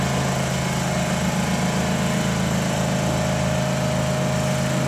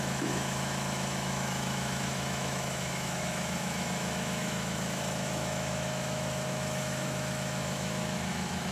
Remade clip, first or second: second